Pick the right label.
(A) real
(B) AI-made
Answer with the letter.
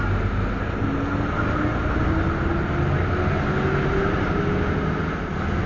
A